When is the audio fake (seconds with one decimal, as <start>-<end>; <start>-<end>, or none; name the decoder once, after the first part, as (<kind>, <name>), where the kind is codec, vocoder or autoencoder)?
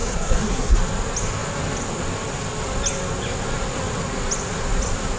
0.0-0.8 (codec, SNAC)